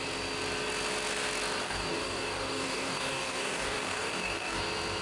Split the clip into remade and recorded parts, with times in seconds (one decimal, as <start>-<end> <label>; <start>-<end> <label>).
0.0-1.6 recorded; 1.6-4.6 remade; 4.6-5.0 recorded